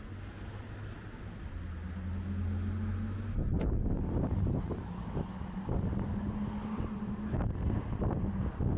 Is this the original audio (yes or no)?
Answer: yes